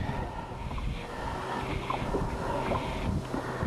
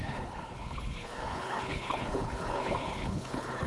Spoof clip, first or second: second